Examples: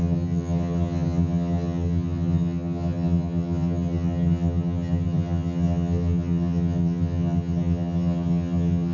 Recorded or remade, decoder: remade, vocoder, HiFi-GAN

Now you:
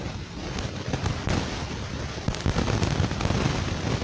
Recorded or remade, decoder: recorded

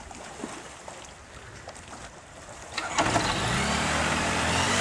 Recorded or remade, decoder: recorded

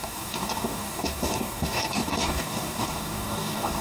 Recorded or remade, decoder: remade, codec, DAC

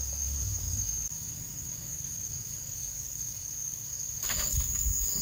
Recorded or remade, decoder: remade, codec, DAC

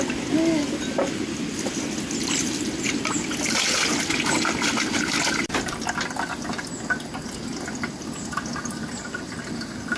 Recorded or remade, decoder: recorded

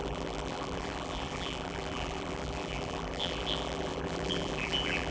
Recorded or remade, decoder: remade, vocoder, BigVGAN v2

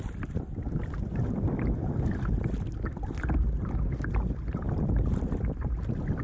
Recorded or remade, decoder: recorded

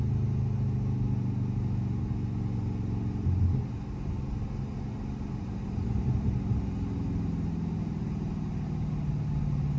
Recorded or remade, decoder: recorded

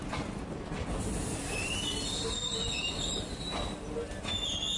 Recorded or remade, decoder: recorded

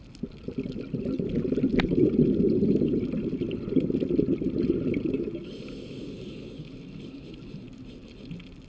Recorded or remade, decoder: recorded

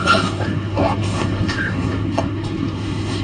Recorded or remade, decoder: remade, codec, SNAC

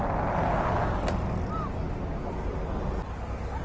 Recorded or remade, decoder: recorded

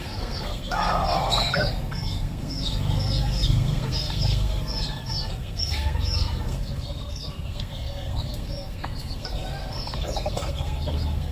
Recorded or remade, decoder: remade, codec, SNAC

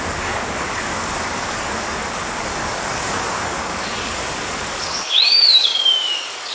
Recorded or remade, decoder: remade, codec, DAC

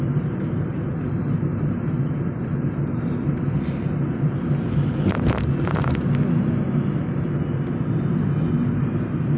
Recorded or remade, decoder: recorded